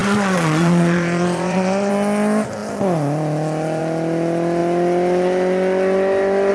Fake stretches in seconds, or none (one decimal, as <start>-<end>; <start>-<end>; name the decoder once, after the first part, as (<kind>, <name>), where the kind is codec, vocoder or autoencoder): 0.0-1.9 (vocoder, Vocos)